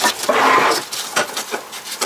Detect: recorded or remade recorded